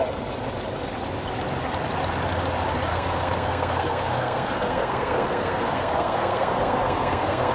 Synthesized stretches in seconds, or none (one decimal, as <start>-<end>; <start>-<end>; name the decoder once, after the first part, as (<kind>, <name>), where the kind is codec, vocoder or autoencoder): 2.9-7.5 (codec, SNAC)